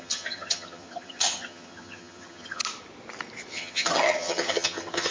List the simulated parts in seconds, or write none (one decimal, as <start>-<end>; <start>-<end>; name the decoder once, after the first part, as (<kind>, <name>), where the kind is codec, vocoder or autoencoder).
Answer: 0.0-2.6 (vocoder, HiFi-GAN); 3.5-5.1